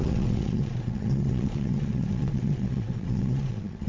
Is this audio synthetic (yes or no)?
yes